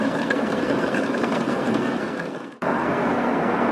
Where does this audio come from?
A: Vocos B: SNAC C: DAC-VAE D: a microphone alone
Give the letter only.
B